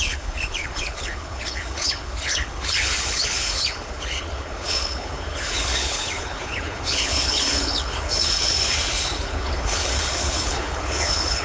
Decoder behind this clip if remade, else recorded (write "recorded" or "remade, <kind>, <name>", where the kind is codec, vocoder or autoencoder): remade, codec, HILCodec